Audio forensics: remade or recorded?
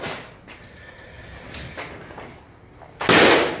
recorded